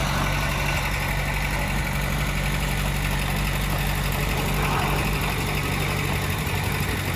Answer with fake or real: real